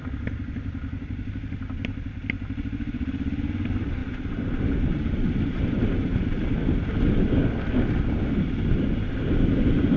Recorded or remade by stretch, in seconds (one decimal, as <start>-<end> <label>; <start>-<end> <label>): 0.0-6.1 recorded; 6.1-6.8 remade; 6.8-10.0 recorded